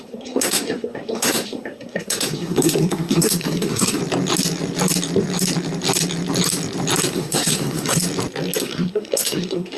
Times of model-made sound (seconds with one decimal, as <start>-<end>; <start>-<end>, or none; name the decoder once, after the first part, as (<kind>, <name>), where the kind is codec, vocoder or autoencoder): 0.0-4.0 (codec, SNAC); 7.1-8.0; 8.6-9.8